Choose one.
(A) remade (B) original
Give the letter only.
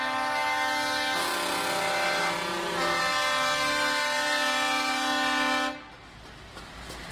B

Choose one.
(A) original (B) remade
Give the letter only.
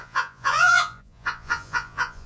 B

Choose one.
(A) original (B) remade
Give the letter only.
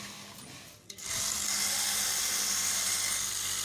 A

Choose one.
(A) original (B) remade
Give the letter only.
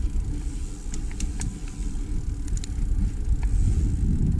A